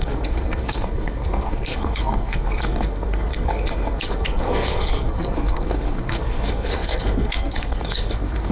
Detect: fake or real fake